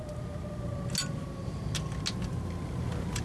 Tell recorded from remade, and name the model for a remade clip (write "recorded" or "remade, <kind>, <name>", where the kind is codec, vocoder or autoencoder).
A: recorded